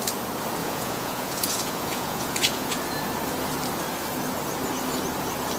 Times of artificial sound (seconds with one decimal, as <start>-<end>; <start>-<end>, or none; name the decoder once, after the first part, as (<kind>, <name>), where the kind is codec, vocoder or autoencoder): 0.6-2.8 (vocoder, Vocos)